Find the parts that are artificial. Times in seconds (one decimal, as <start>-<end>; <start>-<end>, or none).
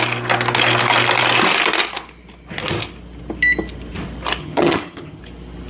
4.4-5.2